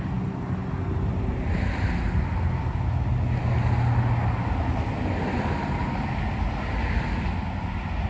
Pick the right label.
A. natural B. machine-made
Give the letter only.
A